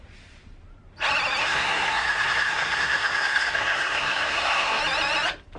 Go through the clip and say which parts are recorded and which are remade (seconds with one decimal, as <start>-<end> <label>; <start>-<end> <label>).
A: 0.0-1.4 recorded; 1.4-4.8 remade; 4.8-5.6 recorded